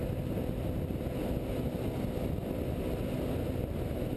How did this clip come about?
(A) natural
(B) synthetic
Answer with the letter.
A